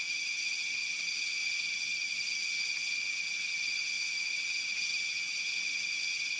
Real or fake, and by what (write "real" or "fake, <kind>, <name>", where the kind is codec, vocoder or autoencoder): fake, vocoder, HiFi-GAN